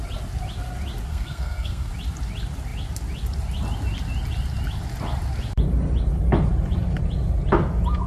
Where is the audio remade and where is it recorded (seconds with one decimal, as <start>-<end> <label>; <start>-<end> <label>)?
0.0-1.1 recorded; 1.1-1.9 remade; 1.9-8.1 recorded